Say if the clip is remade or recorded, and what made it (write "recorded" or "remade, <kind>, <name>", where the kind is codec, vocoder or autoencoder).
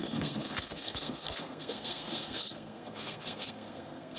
remade, codec, SNAC